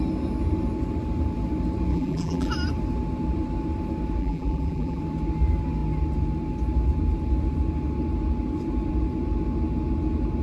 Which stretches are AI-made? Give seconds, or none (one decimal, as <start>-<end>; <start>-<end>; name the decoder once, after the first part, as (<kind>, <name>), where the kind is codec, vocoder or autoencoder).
1.9-2.5 (vocoder, BigVGAN v2); 4.2-5.0